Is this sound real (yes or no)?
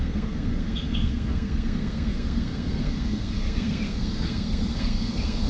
no